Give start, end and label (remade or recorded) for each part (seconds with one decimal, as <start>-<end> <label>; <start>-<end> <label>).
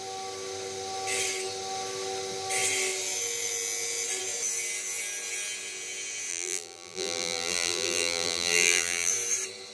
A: 0.0-6.3 recorded; 6.3-9.1 remade; 9.1-9.7 recorded